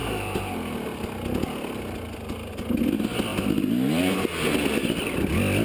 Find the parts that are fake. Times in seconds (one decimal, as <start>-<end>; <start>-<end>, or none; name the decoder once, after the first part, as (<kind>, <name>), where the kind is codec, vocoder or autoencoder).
none